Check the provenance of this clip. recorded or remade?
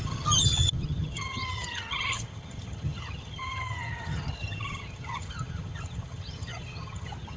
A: remade